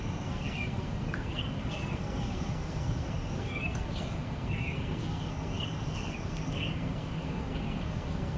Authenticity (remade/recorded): remade